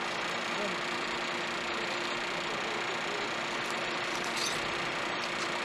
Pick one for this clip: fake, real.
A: real